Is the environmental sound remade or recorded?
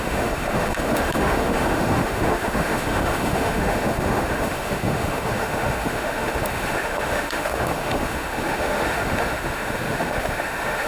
remade